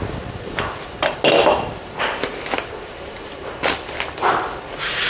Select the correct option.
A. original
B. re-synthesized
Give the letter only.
A